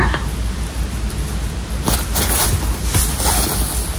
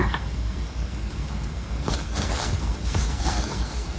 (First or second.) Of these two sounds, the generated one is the second